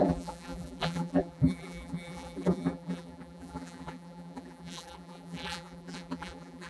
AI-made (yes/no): yes